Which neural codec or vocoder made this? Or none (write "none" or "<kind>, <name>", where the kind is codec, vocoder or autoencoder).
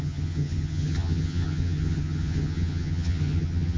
vocoder, HiFi-GAN